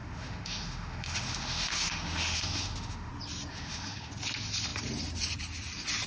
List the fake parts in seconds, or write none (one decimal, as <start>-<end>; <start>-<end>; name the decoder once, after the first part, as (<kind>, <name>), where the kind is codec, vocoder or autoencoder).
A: 0.0-3.1 (autoencoder, DAC-VAE); 3.5-4.1